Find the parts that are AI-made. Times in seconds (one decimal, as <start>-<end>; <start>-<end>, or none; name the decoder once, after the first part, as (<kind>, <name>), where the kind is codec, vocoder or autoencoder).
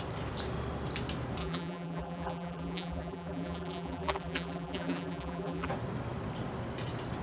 1.4-5.7 (vocoder, BigVGAN v2)